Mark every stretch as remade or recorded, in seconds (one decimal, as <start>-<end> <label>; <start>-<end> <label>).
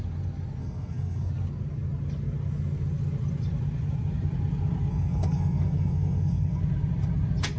0.0-0.6 recorded; 0.6-1.3 remade; 1.3-4.9 recorded; 4.9-6.6 remade; 6.6-7.6 recorded